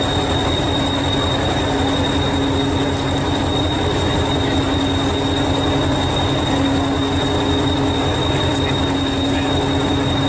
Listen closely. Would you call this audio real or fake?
real